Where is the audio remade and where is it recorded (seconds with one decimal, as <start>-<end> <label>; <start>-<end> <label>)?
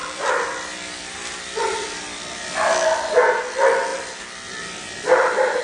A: 0.0-3.4 remade; 3.4-3.9 recorded; 3.9-5.6 remade